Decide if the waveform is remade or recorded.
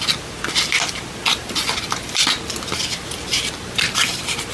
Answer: recorded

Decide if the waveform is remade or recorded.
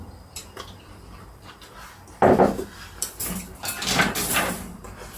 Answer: remade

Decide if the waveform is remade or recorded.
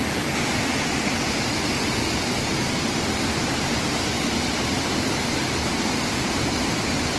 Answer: recorded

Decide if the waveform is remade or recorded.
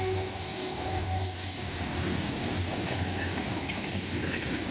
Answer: remade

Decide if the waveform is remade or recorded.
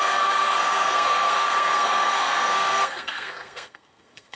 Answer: remade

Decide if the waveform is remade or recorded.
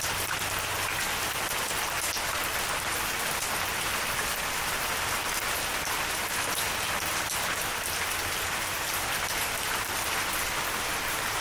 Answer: recorded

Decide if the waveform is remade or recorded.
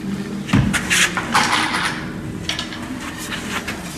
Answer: recorded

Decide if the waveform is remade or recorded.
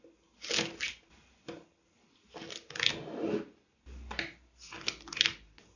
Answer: recorded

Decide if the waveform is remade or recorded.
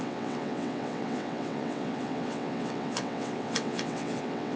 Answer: remade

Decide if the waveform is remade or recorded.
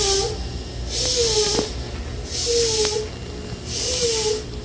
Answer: recorded